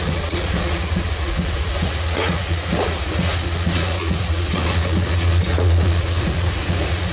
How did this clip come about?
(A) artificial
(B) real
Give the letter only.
A